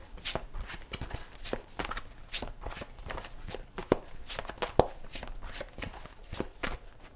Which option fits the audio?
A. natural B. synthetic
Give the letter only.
A